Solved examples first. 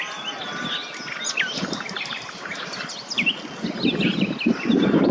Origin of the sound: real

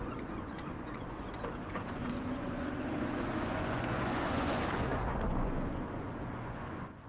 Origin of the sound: fake